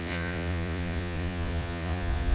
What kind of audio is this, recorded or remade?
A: remade